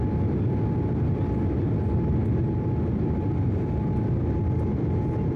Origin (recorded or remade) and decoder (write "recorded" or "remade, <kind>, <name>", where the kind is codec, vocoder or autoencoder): recorded